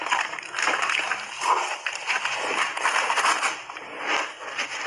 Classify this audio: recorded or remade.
recorded